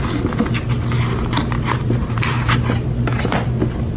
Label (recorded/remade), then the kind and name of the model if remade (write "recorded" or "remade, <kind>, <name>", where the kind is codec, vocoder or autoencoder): recorded